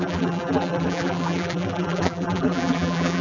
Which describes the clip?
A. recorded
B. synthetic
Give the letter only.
B